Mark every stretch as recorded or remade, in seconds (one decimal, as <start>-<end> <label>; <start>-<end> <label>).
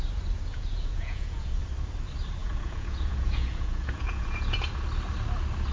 0.0-0.5 recorded; 0.5-1.6 remade; 1.6-2.4 recorded; 2.4-4.7 remade; 4.7-5.7 recorded